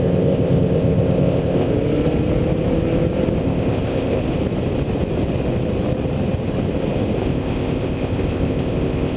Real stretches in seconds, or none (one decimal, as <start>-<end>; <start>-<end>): 1.7-3.4; 4.2-7.2